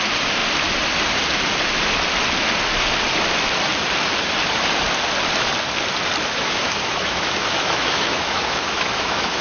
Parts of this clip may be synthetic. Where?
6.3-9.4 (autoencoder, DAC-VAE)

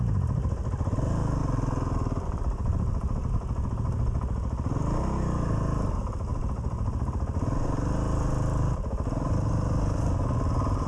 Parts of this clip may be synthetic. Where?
none

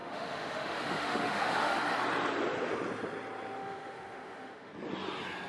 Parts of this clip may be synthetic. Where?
0.0-1.8 (autoencoder, DAC-VAE); 3.6-4.7

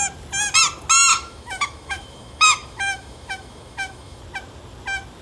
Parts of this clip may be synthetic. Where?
1.1-4.2 (autoencoder, DAC-VAE)

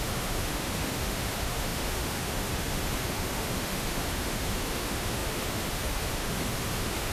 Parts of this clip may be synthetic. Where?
0.0-7.1 (autoencoder, DAC-VAE)